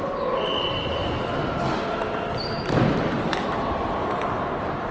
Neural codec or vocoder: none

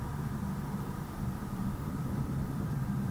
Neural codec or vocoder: vocoder, BigVGAN v2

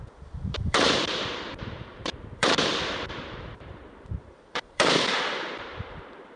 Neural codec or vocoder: vocoder, BigVGAN v2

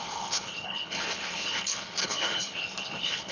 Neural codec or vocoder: codec, HILCodec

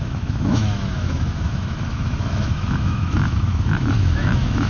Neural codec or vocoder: autoencoder, DAC-VAE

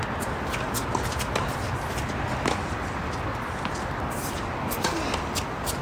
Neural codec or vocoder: none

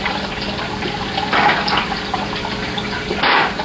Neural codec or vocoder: none